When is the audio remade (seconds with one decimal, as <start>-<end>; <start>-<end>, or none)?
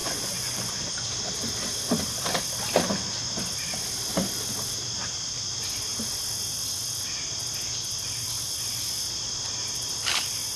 0.0-0.9